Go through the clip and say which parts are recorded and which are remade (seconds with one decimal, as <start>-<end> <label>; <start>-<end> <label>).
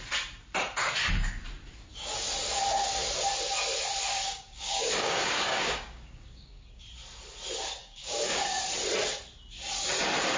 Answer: 0.0-4.1 recorded; 4.1-6.8 remade; 6.8-7.8 recorded; 7.8-8.6 remade; 8.6-10.4 recorded